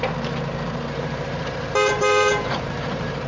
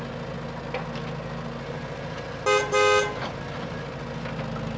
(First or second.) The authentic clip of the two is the second